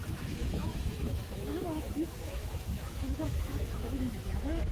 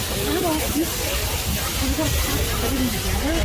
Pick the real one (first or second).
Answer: second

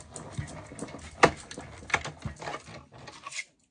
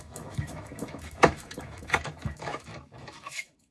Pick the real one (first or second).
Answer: first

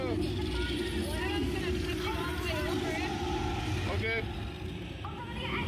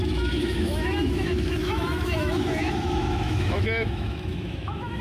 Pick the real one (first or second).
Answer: first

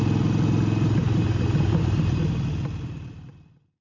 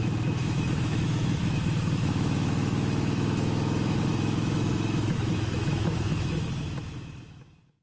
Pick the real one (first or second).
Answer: first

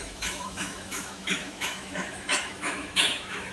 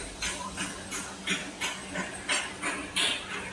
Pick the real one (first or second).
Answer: second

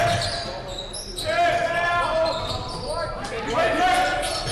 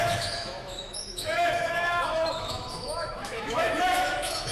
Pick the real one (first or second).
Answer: first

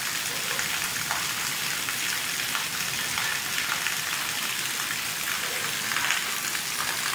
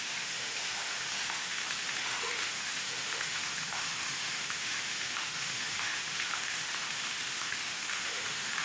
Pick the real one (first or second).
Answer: first